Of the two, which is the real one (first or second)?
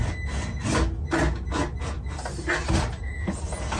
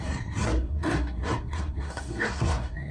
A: first